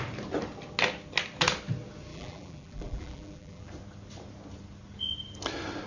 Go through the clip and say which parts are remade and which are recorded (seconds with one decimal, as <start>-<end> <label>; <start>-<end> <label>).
0.0-2.1 recorded; 2.1-3.7 remade; 3.7-5.9 recorded